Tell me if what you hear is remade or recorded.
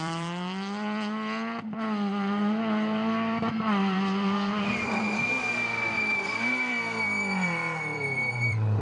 remade